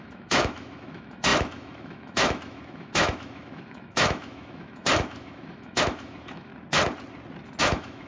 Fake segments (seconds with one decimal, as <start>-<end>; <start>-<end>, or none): 0.0-6.5; 7.6-8.1